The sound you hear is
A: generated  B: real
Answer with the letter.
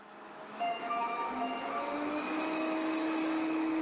A